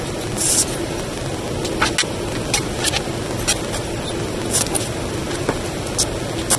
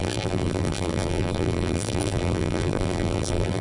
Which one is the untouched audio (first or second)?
first